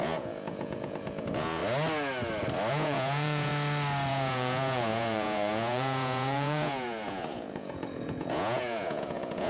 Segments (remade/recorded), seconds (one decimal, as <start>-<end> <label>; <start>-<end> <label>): 0.0-1.6 remade; 1.6-2.7 recorded; 2.7-3.5 remade; 3.5-4.1 recorded; 4.1-9.5 remade